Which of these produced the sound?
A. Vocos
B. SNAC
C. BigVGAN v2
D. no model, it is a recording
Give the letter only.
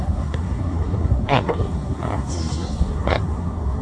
B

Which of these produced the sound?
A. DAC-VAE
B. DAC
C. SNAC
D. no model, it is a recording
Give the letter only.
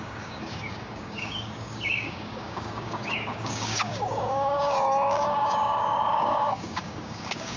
B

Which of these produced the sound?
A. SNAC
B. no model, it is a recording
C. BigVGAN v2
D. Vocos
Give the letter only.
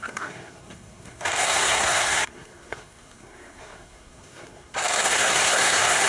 A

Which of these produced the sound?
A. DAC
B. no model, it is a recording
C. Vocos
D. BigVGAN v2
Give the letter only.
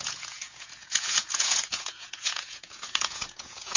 C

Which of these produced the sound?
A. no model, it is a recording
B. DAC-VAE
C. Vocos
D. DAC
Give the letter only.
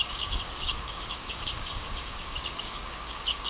D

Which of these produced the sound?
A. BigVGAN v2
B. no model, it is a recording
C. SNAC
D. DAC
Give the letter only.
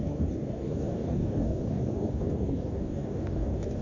D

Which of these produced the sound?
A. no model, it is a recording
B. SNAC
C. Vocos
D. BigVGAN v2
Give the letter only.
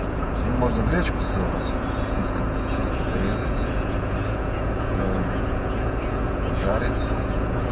C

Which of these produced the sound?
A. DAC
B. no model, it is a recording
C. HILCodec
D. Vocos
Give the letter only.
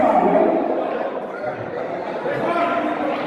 B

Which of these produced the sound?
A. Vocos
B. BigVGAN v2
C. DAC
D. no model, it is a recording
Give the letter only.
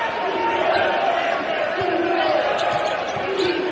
D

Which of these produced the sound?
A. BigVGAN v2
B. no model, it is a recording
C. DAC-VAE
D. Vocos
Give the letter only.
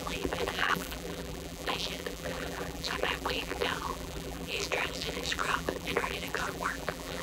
A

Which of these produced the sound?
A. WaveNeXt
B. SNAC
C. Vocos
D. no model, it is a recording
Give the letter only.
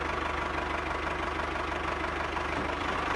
D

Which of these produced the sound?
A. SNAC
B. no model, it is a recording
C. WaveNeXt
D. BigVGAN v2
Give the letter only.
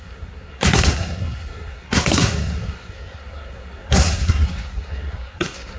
A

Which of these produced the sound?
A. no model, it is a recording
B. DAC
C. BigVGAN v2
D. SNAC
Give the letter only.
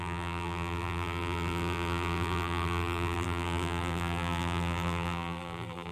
C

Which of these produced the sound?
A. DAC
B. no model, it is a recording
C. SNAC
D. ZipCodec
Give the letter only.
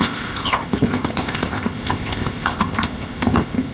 D